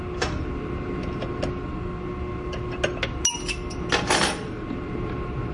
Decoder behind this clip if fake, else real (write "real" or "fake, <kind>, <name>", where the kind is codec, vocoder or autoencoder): real